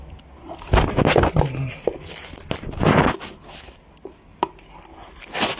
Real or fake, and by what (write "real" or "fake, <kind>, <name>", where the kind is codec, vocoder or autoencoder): real